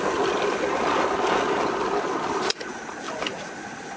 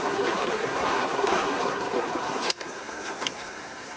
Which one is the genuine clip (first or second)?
first